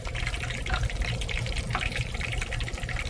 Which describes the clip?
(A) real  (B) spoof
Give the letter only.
A